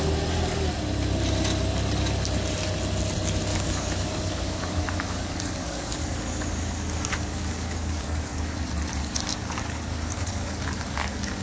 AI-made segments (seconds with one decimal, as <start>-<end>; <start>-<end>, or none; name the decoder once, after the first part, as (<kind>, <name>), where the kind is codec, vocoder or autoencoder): 3.5-8.6 (codec, DAC); 9.0-11.4